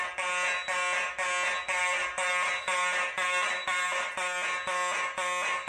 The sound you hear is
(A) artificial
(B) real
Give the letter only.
B